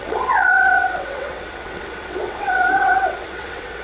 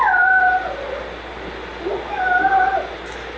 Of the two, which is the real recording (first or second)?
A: second